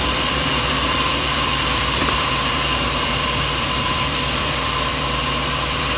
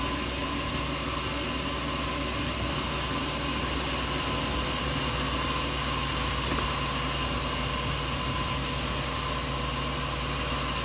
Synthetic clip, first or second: first